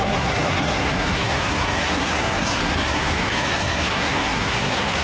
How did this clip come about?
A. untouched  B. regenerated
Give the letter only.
B